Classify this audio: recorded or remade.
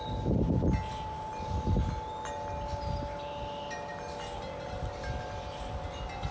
recorded